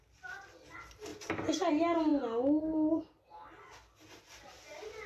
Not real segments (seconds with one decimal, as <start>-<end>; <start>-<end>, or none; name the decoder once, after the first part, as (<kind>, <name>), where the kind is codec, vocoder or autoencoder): none